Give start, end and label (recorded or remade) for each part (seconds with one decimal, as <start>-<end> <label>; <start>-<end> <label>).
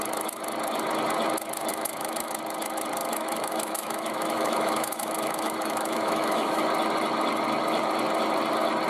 0.0-1.7 recorded; 1.7-2.3 remade; 2.3-3.0 recorded; 3.0-6.6 remade; 6.6-8.9 recorded